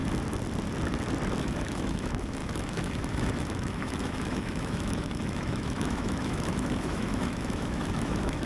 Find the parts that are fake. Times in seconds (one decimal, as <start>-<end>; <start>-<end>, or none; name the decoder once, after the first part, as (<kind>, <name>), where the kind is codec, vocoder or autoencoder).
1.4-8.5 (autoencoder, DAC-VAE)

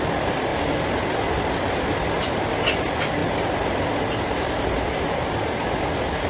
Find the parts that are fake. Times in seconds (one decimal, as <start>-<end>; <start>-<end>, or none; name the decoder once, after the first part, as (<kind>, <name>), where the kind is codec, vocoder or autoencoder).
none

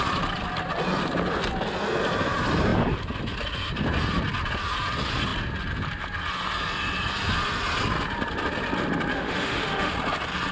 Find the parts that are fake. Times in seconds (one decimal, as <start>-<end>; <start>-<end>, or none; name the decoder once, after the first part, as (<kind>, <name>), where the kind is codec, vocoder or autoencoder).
9.1-9.9 (autoencoder, DAC-VAE)

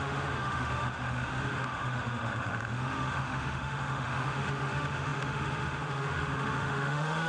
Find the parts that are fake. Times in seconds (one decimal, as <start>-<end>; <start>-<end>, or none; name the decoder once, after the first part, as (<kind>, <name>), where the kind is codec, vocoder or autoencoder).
0.0-7.3 (autoencoder, DAC-VAE)

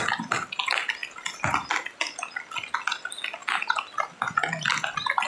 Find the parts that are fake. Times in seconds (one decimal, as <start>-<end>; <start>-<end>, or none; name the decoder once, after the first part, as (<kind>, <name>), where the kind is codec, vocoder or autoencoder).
none

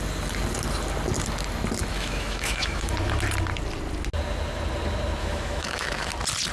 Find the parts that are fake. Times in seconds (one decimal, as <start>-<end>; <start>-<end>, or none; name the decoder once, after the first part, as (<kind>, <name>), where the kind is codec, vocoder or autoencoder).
1.9-2.9 (autoencoder, DAC-VAE); 5.2-6.1

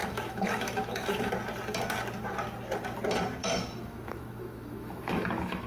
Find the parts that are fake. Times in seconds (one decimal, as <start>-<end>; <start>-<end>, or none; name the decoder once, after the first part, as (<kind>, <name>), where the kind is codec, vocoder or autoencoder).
0.0-1.3 (autoencoder, DAC-VAE); 3.4-5.7

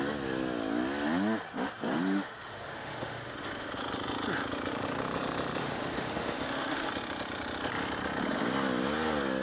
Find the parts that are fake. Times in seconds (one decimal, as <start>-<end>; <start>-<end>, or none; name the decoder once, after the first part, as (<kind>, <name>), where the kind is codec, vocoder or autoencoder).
1.9-3.7 (autoencoder, DAC-VAE); 5.6-6.9